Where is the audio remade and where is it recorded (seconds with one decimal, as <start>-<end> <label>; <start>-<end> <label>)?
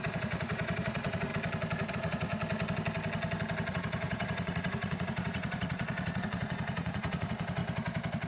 0.0-1.3 remade; 1.3-1.9 recorded; 1.9-2.3 remade; 2.3-3.7 recorded; 3.7-7.6 remade; 7.6-8.3 recorded